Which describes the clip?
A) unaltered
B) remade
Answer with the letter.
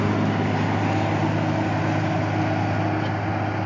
A